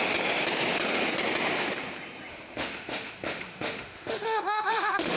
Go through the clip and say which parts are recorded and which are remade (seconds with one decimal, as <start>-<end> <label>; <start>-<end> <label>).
0.0-2.3 recorded; 2.3-5.2 remade

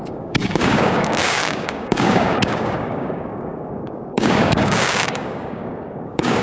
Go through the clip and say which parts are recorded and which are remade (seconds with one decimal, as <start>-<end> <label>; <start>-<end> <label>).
0.0-6.4 remade